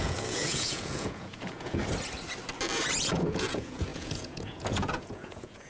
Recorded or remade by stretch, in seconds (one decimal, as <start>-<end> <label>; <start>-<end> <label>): 0.0-1.8 remade; 1.8-3.0 recorded; 3.0-5.7 remade